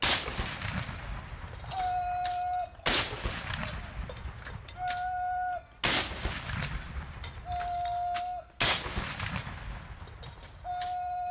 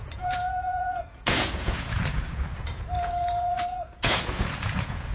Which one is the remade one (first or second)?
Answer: second